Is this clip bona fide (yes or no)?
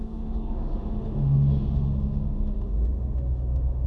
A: no